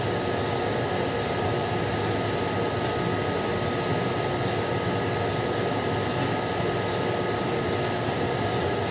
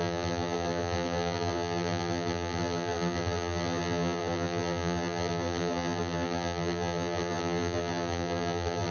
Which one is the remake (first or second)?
second